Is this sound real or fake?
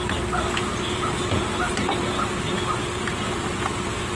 real